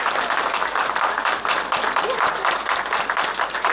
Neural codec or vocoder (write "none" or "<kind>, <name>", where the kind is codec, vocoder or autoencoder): none